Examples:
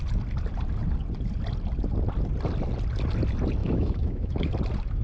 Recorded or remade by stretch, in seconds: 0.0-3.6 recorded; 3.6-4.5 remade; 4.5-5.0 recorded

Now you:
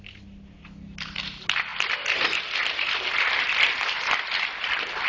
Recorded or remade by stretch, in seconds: 0.0-5.1 recorded

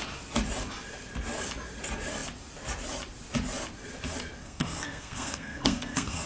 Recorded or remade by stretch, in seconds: 0.0-4.4 recorded; 4.4-6.3 remade

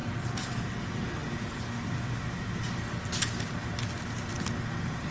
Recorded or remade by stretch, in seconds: 0.0-0.5 remade; 0.5-5.1 recorded

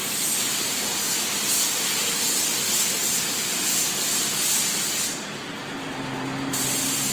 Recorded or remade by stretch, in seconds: 0.0-7.1 recorded

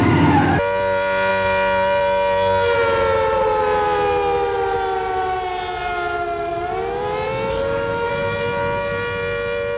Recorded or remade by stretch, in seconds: 0.0-7.5 recorded; 7.5-8.1 remade; 8.1-9.8 recorded

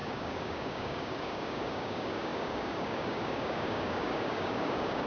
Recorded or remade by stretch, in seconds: 0.0-5.1 remade

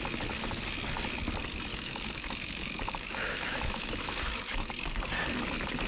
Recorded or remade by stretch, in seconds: 0.0-1.7 recorded; 1.7-4.7 remade; 4.7-5.9 recorded